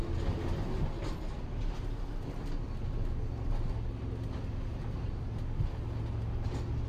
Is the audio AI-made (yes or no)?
no